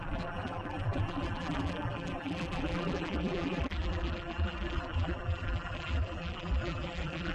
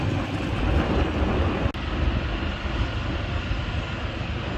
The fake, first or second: first